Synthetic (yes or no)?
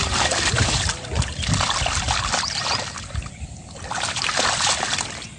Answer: no